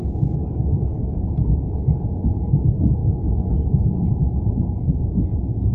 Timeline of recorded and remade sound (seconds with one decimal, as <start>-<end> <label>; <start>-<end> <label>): 0.0-5.7 recorded